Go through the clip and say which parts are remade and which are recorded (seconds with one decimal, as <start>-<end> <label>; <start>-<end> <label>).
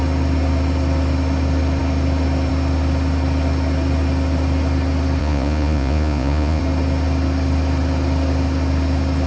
0.0-5.2 recorded; 5.2-6.6 remade; 6.6-9.3 recorded